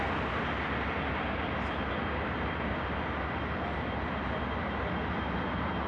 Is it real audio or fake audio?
real